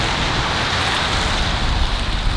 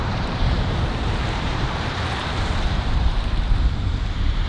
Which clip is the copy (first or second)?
second